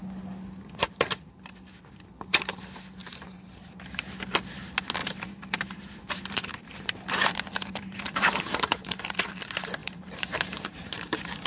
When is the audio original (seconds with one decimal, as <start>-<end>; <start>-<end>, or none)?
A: 0.0-3.0; 4.1-5.0; 9.3-9.8